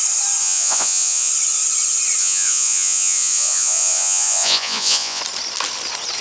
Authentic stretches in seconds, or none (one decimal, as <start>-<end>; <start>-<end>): 0.0-0.4; 1.3-2.2; 5.2-6.2